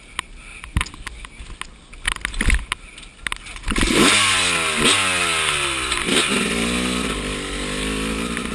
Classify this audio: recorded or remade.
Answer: recorded